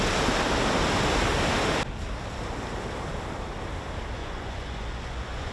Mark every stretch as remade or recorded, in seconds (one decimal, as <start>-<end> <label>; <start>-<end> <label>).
0.0-4.2 recorded; 4.2-5.5 remade